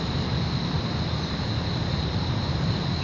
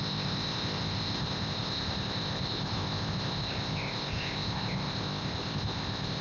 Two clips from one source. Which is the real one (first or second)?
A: first